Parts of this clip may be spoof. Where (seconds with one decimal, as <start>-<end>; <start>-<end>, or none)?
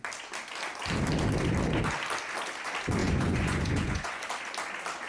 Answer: 3.0-4.2